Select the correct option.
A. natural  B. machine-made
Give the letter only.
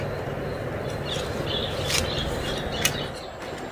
A